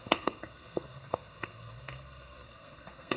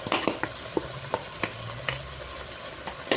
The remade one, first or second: first